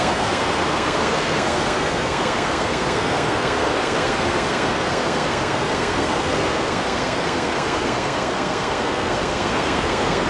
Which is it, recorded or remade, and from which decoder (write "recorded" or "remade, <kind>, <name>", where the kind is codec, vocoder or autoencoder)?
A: remade, codec, SNAC